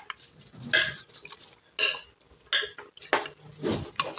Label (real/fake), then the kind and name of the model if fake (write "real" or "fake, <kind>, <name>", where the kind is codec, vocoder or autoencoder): real